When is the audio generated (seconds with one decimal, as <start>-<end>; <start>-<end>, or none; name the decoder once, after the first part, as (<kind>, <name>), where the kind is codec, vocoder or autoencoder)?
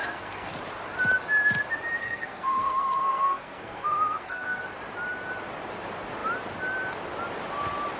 0.0-0.5 (codec, SNAC); 2.0-4.6